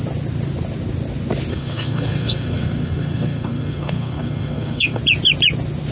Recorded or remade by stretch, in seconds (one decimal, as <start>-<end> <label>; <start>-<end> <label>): 0.0-1.5 recorded; 1.5-5.0 remade; 5.0-5.9 recorded